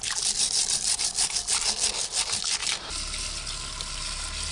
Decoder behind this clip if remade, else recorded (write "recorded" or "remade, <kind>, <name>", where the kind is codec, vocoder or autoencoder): recorded